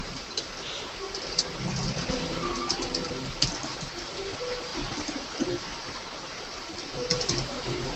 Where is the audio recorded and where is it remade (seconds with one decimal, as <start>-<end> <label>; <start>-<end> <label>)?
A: 0.0-4.7 recorded; 4.7-8.0 remade